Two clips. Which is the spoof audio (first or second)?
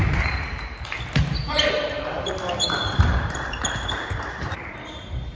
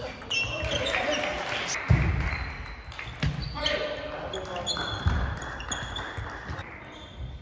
first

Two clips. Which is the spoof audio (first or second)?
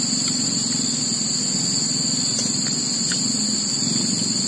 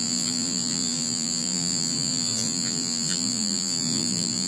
second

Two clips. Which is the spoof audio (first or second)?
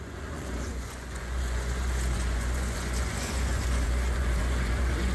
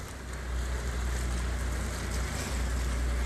first